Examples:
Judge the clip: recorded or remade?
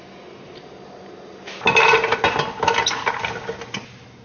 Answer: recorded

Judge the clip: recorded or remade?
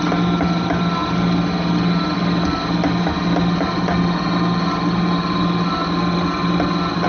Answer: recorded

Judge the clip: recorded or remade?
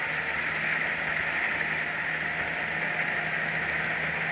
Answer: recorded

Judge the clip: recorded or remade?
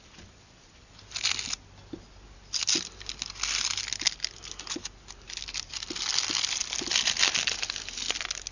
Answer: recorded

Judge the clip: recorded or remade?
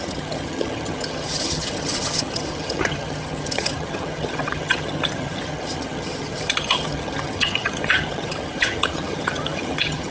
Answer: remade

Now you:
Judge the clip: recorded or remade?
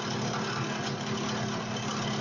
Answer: recorded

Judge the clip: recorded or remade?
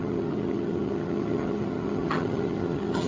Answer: remade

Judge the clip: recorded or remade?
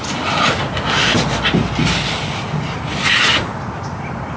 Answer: recorded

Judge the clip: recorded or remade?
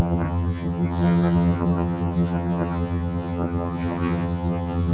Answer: remade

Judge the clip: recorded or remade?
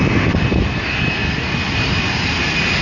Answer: recorded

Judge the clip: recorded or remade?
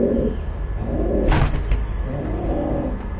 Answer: recorded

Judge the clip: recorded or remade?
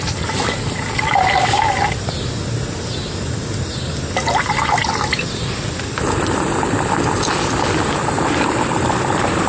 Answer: recorded